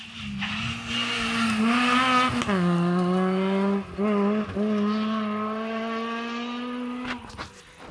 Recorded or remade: recorded